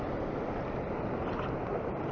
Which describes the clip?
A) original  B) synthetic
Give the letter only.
A